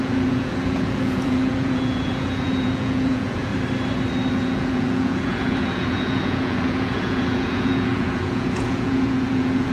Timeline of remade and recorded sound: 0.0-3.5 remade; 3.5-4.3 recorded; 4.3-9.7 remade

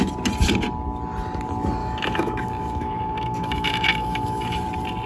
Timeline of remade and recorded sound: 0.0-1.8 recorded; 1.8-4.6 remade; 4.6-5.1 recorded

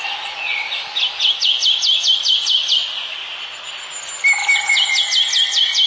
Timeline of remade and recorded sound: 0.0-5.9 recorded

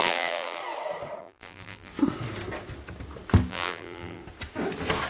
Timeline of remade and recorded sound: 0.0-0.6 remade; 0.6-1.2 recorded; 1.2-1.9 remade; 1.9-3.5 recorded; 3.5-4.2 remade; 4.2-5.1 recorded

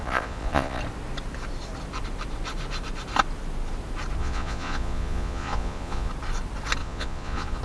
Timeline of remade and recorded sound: 0.0-0.8 remade; 0.8-4.2 recorded; 4.2-6.1 remade; 6.1-6.8 recorded; 6.8-7.6 remade

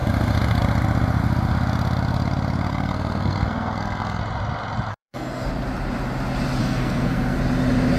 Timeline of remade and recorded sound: 0.0-2.7 recorded; 2.7-4.2 remade; 4.2-4.9 recorded; 4.9-5.5 remade; 5.5-6.6 recorded; 6.6-7.4 remade; 7.4-8.0 recorded

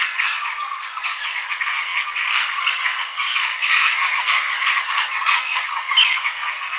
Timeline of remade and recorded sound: 0.0-6.8 remade

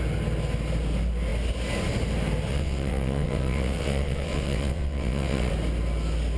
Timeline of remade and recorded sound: 0.0-2.5 recorded; 2.5-5.5 remade; 5.5-6.4 recorded